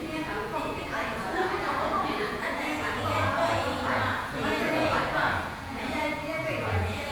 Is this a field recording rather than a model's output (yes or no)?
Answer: no